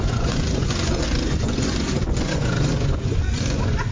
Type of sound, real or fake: fake